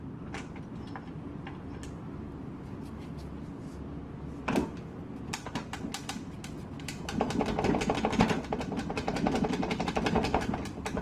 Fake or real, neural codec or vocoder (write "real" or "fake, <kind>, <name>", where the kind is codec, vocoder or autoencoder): real